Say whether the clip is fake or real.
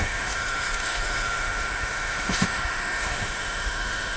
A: fake